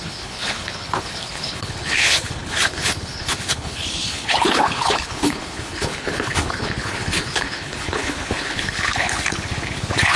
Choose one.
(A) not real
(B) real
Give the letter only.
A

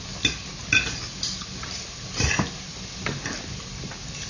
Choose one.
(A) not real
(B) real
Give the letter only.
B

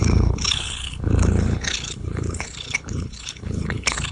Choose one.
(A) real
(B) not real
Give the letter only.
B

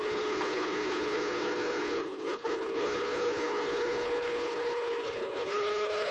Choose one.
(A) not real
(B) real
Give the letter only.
A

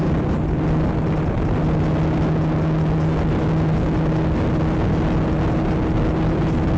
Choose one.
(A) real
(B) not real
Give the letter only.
A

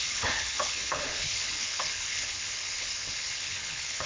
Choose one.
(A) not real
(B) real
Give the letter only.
A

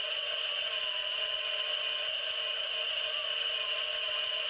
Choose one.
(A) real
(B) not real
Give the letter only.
A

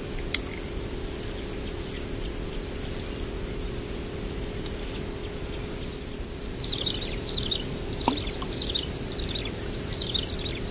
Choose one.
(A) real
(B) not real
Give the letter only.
A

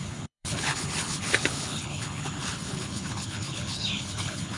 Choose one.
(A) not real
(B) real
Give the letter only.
A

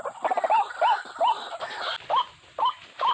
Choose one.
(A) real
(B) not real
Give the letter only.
A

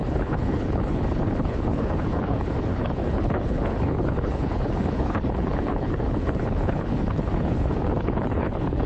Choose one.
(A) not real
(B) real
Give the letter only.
A